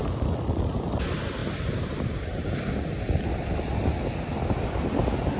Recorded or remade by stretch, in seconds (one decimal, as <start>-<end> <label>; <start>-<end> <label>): 0.0-5.4 recorded